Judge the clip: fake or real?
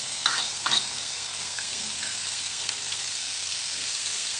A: fake